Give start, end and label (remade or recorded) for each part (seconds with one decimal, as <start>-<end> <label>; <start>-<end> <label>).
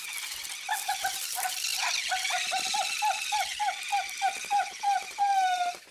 0.0-5.9 recorded